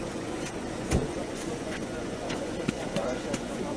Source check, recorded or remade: remade